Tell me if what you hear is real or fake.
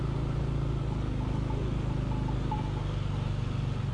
real